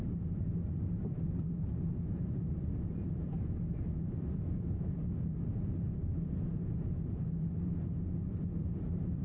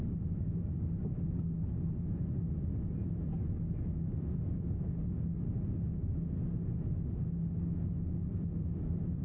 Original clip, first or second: second